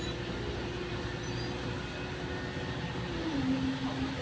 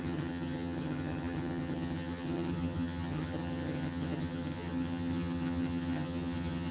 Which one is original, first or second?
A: first